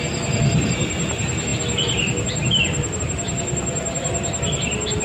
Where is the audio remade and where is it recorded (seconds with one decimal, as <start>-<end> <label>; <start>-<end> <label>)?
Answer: 0.0-5.0 recorded